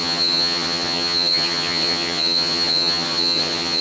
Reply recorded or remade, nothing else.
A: remade